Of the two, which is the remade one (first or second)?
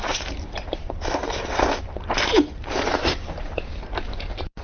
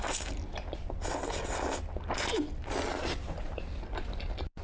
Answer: first